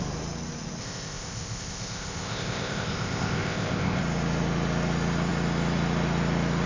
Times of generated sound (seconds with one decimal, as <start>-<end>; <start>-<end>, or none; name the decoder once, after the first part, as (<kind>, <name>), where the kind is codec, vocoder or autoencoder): 0.8-4.0 (codec, ZipCodec)